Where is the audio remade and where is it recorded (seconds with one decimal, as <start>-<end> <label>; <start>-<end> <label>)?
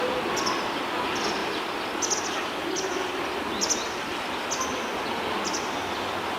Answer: 0.0-6.4 recorded